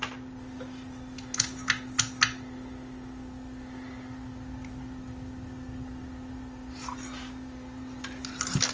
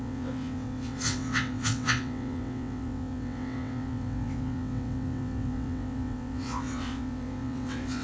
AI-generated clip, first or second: second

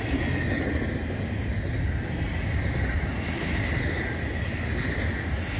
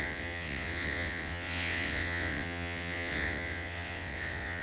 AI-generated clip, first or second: second